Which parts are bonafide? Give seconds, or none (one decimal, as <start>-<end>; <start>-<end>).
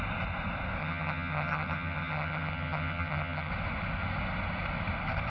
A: 0.0-0.8; 3.5-5.3